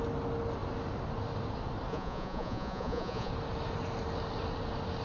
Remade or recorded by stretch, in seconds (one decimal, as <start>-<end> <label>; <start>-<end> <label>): 0.0-1.9 recorded; 1.9-3.3 remade; 3.3-5.0 recorded